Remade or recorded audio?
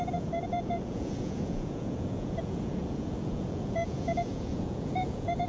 remade